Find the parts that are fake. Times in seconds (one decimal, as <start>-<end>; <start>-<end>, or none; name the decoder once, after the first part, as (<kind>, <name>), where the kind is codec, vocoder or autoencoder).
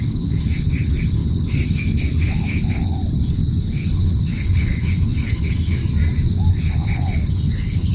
0.0-5.8 (codec, HILCodec); 6.5-7.9